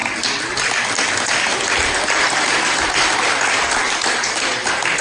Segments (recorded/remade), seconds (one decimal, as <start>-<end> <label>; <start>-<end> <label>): 0.0-1.1 remade; 1.1-1.5 recorded; 1.5-4.5 remade; 4.5-5.0 recorded